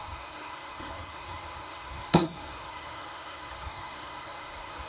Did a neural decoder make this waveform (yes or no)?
yes